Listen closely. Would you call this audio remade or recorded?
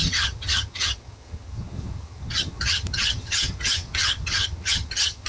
remade